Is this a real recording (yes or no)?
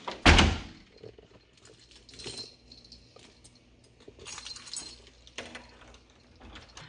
yes